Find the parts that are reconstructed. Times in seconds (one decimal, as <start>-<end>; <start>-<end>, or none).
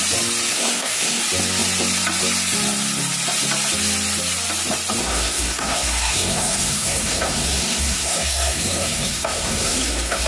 0.5-1.2; 5.0-10.3